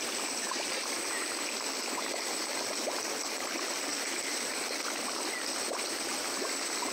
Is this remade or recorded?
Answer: recorded